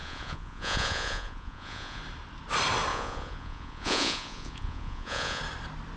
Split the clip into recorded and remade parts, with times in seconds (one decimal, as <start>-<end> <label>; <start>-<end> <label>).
0.0-2.0 remade; 2.0-2.9 recorded; 2.9-5.4 remade; 5.4-6.0 recorded